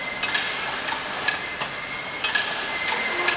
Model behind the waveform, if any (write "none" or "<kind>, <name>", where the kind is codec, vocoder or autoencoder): none